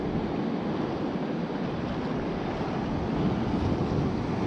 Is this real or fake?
real